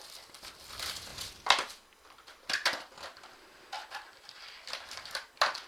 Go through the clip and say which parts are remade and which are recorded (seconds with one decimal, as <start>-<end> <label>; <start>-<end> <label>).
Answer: 0.0-5.7 recorded